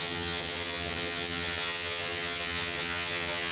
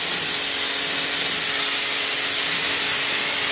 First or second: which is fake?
first